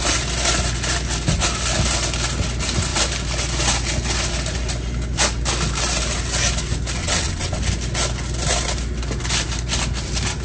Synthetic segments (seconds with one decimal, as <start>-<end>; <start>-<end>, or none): 7.0-7.6